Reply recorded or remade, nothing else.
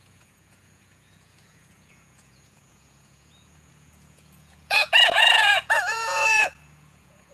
remade